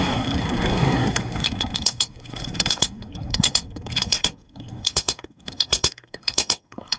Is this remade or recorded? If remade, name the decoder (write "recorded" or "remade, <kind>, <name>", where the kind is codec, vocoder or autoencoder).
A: remade, codec, SNAC